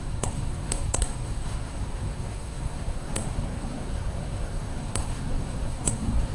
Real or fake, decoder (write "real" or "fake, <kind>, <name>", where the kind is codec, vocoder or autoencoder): fake, codec, SNAC